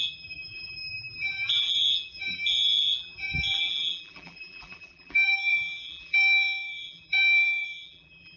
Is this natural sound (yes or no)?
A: no